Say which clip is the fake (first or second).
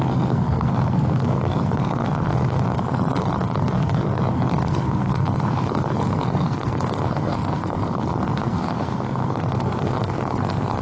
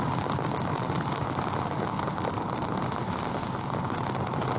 first